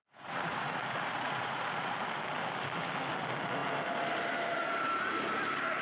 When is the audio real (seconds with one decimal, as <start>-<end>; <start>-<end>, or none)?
1.9-5.8